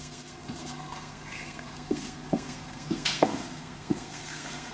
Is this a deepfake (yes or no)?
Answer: yes